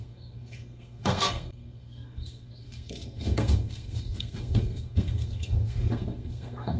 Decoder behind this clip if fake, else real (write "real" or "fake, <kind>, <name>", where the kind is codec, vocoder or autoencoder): fake, codec, SNAC